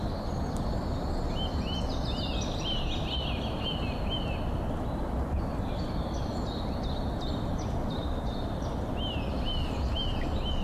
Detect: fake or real real